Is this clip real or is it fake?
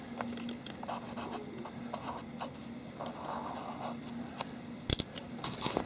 real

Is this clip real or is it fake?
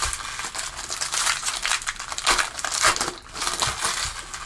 real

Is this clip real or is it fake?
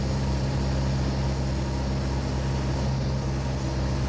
real